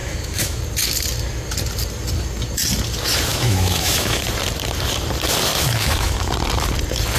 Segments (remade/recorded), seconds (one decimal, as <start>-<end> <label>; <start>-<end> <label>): 0.0-0.6 remade; 0.6-3.3 recorded; 3.3-4.2 remade; 4.2-5.5 recorded; 5.5-6.3 remade; 6.3-7.2 recorded